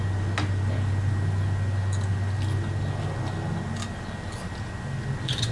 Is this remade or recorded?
recorded